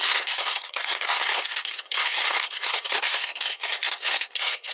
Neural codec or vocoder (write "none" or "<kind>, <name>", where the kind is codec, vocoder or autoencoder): codec, SNAC